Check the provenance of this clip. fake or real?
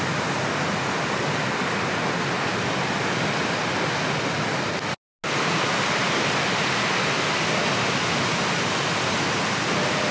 real